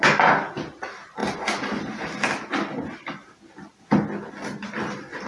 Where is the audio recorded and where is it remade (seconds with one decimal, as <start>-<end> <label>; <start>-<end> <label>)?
0.0-5.3 recorded